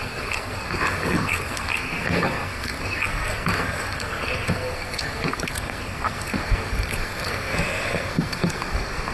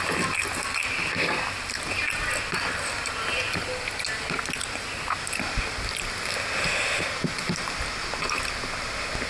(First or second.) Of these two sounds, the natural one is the second